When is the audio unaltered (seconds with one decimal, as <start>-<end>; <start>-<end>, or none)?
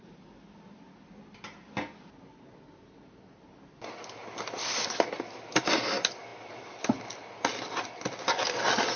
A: 0.0-9.0